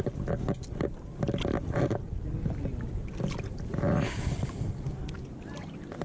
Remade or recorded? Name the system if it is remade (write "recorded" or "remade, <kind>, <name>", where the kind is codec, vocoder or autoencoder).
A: recorded